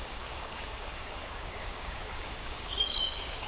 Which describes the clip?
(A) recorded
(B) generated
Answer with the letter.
B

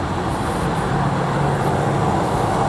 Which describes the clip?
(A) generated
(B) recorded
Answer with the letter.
B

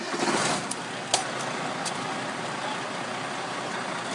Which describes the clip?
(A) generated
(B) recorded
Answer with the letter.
B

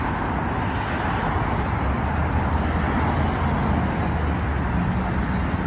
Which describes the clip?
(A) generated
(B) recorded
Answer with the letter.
B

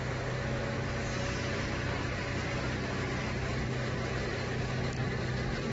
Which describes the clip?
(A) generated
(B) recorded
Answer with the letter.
B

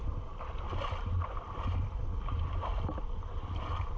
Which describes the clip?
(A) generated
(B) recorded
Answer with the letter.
B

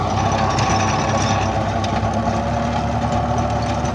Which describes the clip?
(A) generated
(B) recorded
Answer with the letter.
B